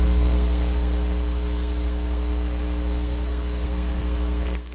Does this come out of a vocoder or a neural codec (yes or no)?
yes